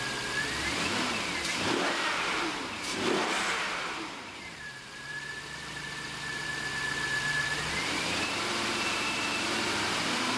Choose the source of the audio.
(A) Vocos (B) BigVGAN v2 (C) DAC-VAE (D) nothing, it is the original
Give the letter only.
B